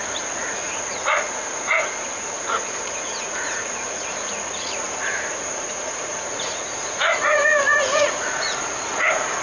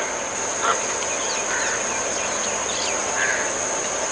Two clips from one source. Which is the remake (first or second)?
first